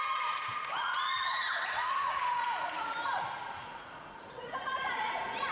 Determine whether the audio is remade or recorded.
remade